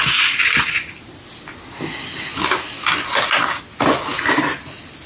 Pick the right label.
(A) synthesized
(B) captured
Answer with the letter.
B